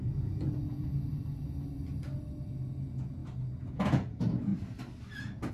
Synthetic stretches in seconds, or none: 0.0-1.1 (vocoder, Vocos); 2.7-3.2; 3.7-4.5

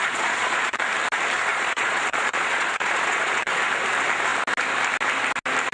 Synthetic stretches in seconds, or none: 0.0-0.8 (vocoder, Vocos); 1.5-3.7